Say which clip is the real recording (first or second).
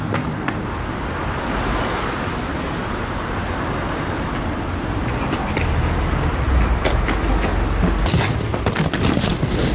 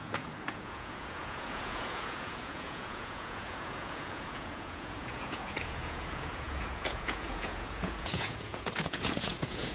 first